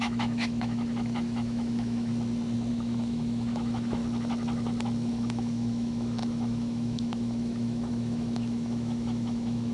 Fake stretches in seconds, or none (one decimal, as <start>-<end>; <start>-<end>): 0.0-2.1; 2.7-4.0; 5.1-9.7